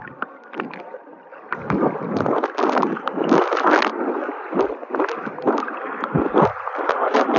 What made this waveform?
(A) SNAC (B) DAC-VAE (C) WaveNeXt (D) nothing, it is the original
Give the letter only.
D